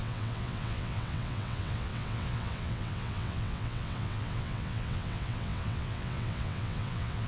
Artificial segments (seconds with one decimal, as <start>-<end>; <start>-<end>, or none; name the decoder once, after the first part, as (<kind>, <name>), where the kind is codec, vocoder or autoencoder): 0.0-7.3 (vocoder, WaveNeXt)

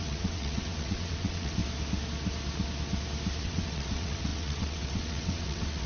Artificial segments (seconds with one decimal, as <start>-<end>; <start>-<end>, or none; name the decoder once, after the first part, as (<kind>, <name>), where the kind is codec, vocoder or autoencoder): 0.0-1.6 (vocoder, WaveNeXt); 3.4-5.9